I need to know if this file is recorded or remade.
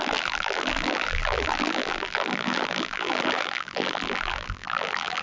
remade